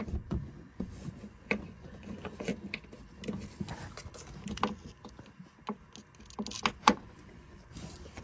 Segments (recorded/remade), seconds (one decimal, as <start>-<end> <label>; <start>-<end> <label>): 0.0-2.5 remade; 2.5-6.8 recorded; 6.8-8.2 remade